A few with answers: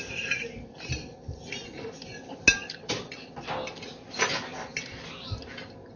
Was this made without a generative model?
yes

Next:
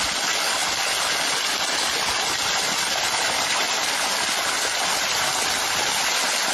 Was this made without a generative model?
yes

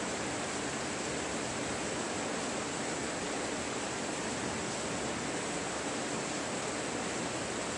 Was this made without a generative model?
yes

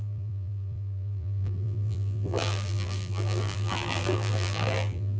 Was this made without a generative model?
no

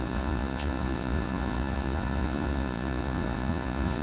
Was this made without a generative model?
no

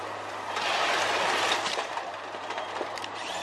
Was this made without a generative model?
no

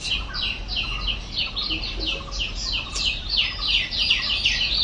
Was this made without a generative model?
yes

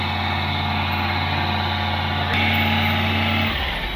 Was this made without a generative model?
yes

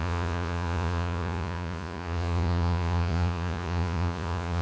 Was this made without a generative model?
no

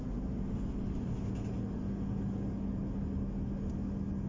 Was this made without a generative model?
yes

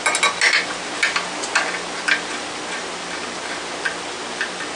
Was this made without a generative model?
yes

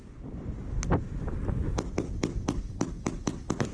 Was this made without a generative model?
yes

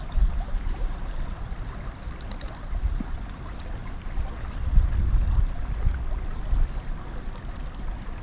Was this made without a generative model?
yes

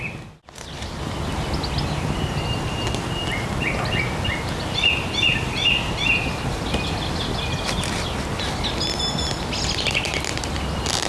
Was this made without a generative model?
yes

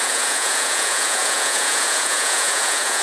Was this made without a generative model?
no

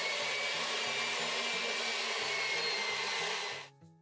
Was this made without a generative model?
yes